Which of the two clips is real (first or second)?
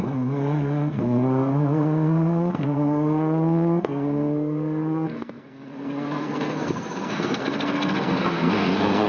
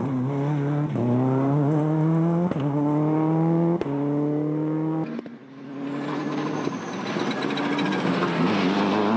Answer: second